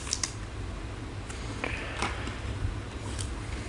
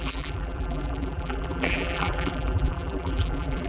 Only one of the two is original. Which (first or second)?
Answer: first